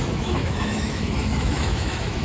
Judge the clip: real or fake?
fake